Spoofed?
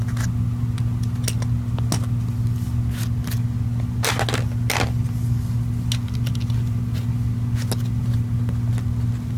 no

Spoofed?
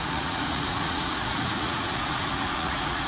yes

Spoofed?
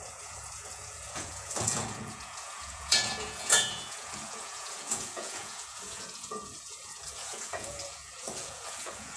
yes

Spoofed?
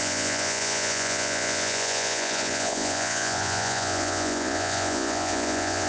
yes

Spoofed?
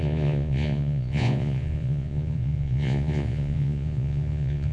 yes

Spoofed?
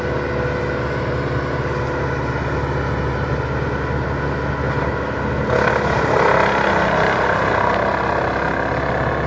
no